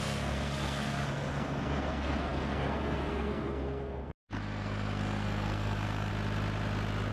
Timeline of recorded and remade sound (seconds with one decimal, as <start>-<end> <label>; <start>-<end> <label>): 0.0-6.1 remade; 6.1-7.1 recorded